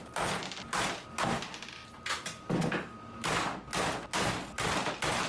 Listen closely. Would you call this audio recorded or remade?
recorded